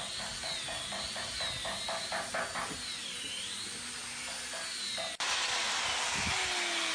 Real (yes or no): yes